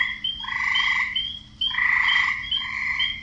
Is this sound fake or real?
real